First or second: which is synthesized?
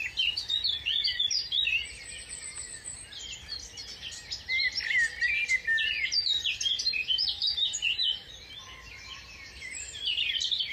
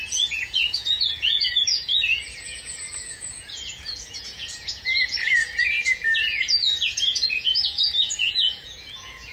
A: second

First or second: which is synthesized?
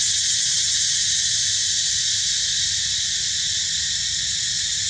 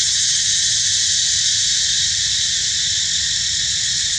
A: first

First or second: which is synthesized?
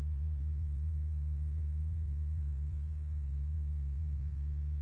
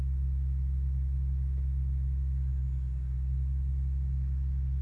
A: first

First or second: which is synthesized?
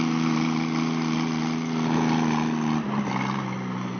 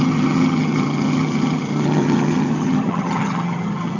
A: second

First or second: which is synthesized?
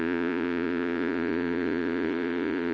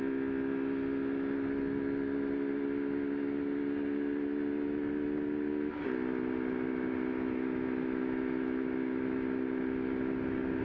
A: first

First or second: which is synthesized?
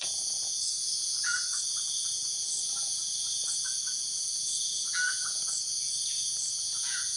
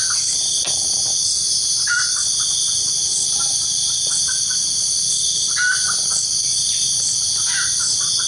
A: first